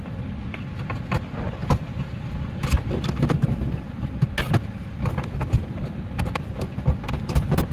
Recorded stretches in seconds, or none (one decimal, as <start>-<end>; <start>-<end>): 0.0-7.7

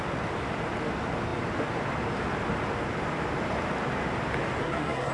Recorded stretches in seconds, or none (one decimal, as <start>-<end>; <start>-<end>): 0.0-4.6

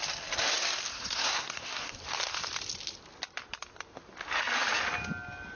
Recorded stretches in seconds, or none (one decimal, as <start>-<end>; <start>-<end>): 0.0-0.9; 2.0-5.6

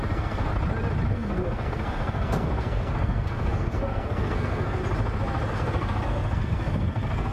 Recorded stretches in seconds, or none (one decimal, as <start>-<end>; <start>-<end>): 0.5-1.1; 4.8-5.5

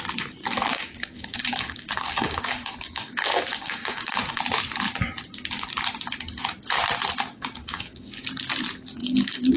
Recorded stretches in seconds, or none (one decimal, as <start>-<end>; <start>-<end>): 0.0-0.7; 4.4-7.3; 8.1-9.0

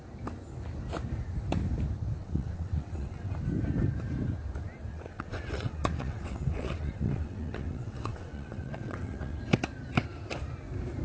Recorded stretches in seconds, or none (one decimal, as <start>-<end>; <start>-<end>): 0.0-2.2; 3.3-4.9; 9.4-11.0

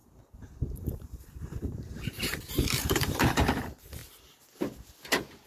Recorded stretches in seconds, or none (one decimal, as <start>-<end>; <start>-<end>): 4.0-5.5

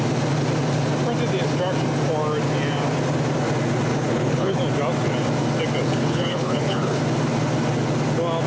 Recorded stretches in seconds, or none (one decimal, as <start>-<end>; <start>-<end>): 0.0-3.9; 4.6-5.9; 7.0-8.5